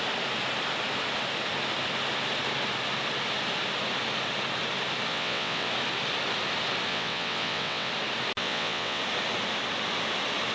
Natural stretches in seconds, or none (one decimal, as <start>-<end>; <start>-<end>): 0.0-5.1; 5.7-6.9; 7.9-8.4; 9.0-10.5